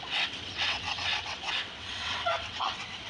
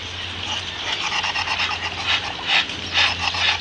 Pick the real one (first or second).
second